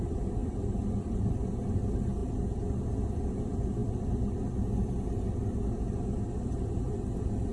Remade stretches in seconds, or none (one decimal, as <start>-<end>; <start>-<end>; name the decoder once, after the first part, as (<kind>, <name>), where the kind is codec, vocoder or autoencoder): 0.4-1.4 (vocoder, BigVGAN v2); 3.8-4.4